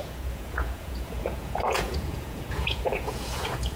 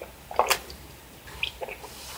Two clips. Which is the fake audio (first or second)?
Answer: first